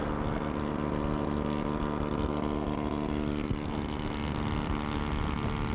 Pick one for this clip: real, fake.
real